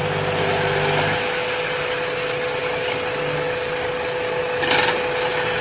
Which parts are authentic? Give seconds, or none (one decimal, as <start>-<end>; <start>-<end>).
0.0-2.6; 4.4-5.6

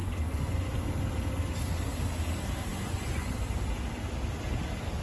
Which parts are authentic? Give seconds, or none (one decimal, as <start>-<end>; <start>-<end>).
0.8-2.7; 3.3-5.0

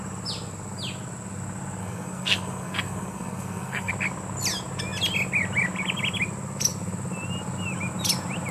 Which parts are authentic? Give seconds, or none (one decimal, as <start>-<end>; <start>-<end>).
0.0-1.8; 3.9-8.5

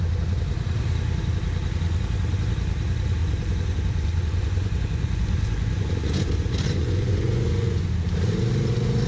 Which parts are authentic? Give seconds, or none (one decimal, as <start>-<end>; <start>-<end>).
0.0-3.2; 7.9-9.1

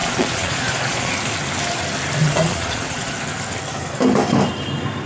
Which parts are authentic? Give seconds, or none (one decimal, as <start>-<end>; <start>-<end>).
1.1-2.2; 3.1-5.1